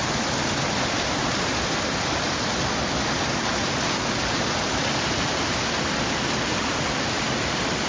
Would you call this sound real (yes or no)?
no